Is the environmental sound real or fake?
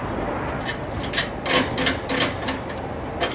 real